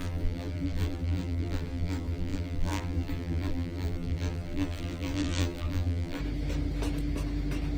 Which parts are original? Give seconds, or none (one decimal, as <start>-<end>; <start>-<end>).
6.2-7.8